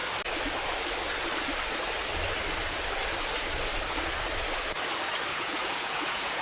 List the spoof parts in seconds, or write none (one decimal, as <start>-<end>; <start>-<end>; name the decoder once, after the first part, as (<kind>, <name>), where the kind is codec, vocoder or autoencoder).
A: 5.3-6.4 (vocoder, Vocos)